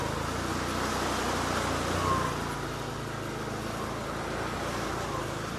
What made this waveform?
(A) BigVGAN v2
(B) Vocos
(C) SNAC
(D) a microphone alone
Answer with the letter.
D